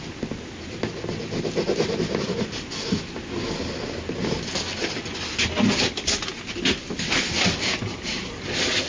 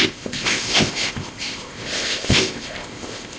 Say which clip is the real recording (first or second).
first